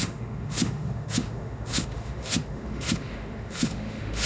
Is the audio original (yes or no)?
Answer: no